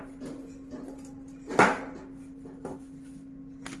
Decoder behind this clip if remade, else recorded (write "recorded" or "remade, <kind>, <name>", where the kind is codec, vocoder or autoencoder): recorded